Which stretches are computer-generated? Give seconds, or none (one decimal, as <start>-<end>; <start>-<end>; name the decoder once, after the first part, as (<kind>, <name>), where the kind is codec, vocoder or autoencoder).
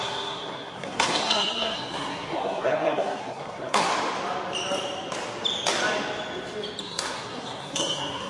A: 0.0-3.9 (codec, SNAC); 6.8-8.3